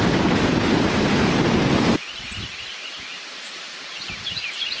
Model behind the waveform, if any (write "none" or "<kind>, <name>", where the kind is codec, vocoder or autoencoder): vocoder, BigVGAN v2